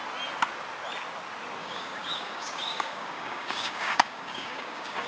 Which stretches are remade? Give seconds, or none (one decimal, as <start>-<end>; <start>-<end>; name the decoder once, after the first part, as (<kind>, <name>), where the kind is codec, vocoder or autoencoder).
1.6-5.1 (codec, DAC)